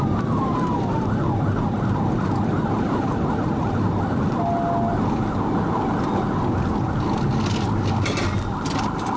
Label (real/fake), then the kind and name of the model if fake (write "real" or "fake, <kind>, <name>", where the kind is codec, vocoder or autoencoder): real